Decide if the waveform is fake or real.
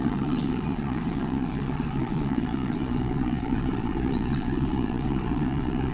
fake